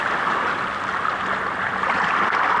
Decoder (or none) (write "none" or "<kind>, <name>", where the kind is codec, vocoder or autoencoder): none